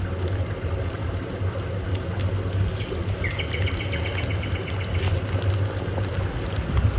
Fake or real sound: real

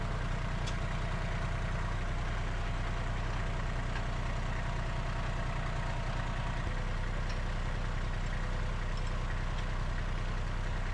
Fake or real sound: real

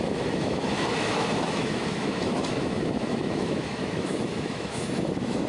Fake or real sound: fake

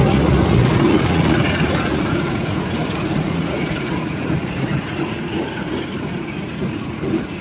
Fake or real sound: fake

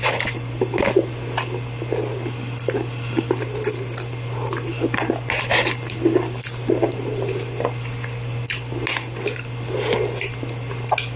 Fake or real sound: real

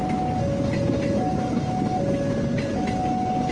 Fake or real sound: real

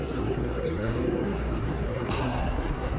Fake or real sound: fake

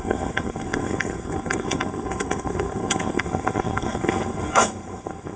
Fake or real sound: fake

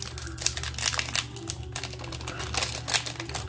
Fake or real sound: real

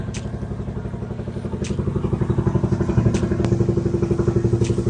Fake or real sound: real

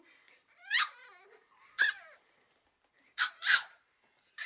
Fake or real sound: fake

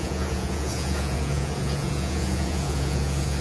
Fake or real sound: fake